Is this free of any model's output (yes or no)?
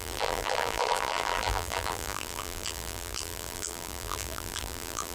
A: no